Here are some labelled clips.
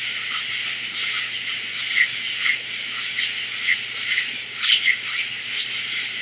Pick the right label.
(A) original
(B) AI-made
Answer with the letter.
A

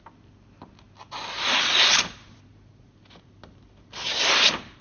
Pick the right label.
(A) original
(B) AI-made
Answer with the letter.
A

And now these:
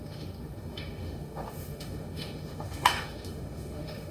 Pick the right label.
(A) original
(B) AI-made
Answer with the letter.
B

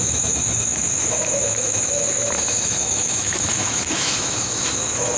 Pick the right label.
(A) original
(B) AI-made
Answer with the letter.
B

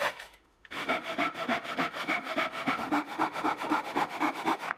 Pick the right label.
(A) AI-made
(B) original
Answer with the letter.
A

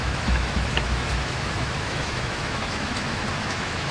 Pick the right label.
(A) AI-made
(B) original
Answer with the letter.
A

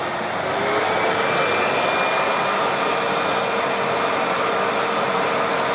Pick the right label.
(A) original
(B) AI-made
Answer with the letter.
A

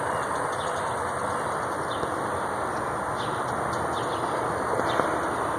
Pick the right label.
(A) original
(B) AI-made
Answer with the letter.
A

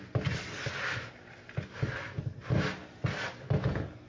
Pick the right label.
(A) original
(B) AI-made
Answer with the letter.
A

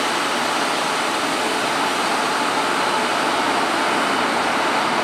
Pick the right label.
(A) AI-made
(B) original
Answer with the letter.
B